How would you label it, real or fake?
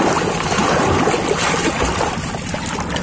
real